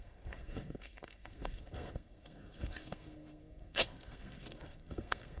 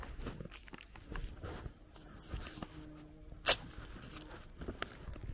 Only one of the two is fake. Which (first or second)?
first